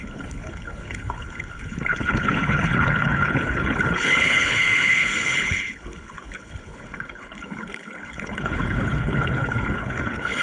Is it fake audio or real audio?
fake